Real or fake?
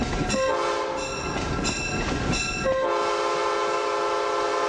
real